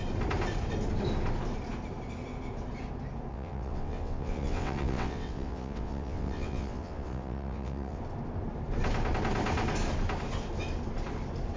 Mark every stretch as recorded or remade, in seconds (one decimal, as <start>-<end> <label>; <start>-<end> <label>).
0.0-3.3 recorded; 3.3-8.0 remade; 8.0-11.6 recorded